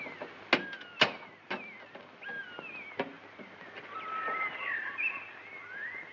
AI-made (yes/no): no